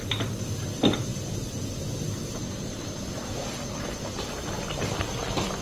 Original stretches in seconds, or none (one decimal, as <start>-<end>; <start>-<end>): 0.0-1.1; 2.2-5.6